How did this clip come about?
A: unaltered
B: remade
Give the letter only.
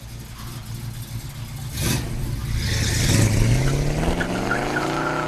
A